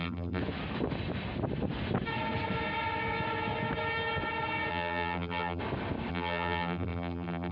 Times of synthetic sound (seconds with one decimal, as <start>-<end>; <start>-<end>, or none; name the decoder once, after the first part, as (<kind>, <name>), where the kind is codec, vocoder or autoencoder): 0.0-0.4 (vocoder, BigVGAN v2); 4.7-5.6; 6.1-7.5